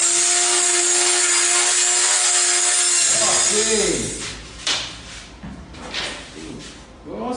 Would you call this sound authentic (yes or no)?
yes